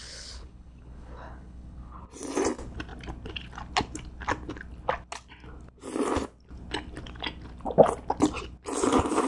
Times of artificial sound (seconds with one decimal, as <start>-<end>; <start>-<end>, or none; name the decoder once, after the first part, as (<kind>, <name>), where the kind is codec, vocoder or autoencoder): 0.0-2.0 (codec, HILCodec)